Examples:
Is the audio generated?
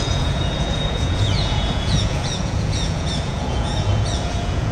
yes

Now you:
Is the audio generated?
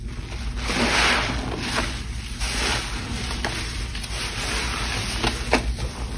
no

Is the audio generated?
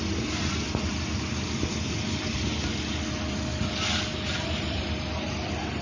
no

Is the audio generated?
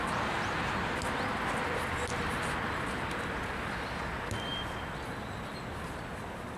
no